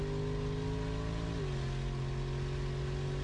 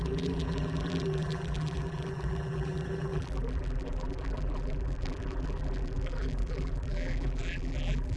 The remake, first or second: second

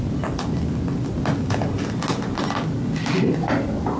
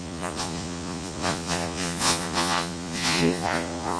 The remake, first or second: second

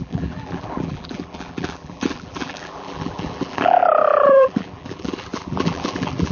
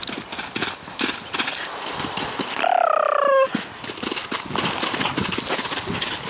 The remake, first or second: first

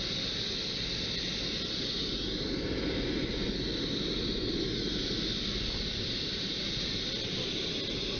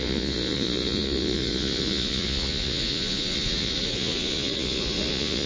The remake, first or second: second